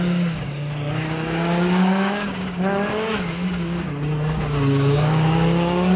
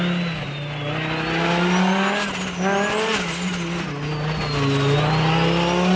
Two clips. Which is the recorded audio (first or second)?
second